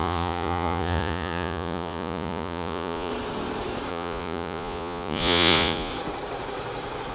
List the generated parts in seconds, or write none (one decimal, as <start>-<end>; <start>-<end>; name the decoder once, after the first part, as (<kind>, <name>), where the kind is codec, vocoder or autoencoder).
0.0-3.1 (vocoder, Vocos); 3.9-5.9